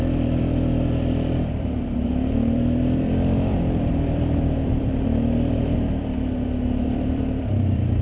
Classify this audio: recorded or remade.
remade